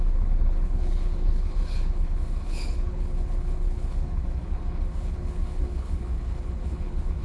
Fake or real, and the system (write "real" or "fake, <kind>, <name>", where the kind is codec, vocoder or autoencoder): fake, codec, HILCodec